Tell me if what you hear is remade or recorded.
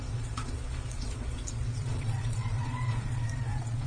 remade